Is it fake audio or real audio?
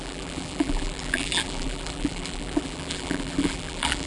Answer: fake